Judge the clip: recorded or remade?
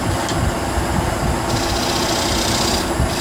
recorded